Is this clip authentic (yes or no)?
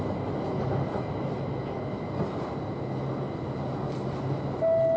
yes